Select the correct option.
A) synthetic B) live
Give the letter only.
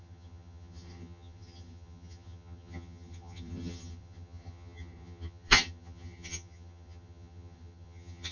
A